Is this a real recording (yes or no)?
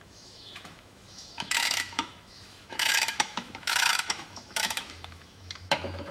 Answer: no